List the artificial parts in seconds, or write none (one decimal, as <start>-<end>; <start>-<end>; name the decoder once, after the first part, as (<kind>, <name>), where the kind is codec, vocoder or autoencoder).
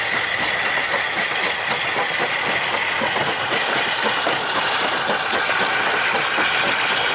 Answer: 2.8-3.4 (vocoder, Vocos)